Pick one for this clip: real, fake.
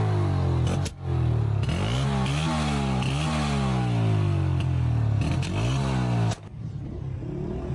real